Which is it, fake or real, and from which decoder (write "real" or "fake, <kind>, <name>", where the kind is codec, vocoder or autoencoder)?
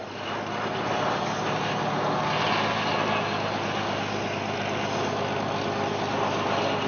real